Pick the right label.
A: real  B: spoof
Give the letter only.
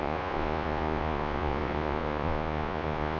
B